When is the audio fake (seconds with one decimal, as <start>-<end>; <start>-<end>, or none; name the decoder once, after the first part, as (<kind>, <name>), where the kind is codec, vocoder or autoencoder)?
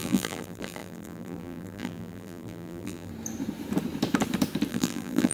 0.0-3.1 (vocoder, BigVGAN v2); 4.7-5.3